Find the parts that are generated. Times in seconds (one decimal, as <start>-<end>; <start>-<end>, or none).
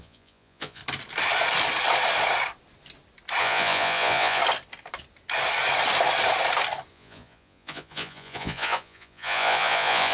0.0-0.8; 3.4-4.4; 6.9-10.1